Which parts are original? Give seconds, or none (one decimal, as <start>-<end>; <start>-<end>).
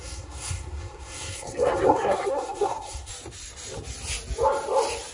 3.1-5.1